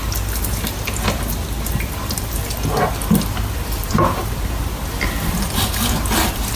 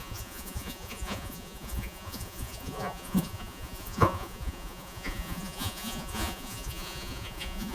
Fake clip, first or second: second